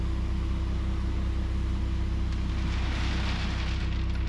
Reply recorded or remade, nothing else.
recorded